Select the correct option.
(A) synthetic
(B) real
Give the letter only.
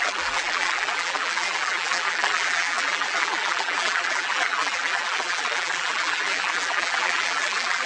A